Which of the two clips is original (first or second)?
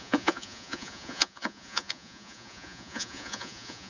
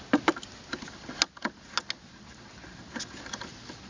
second